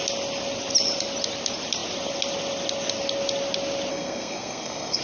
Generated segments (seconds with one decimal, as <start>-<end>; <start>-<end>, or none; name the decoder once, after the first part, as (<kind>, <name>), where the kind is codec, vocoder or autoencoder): 3.9-5.0 (codec, SNAC)